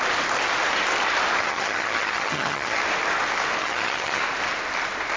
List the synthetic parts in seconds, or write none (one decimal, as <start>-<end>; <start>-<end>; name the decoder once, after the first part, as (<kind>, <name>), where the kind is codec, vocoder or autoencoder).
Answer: 1.4-2.8 (vocoder, HiFi-GAN); 3.6-4.2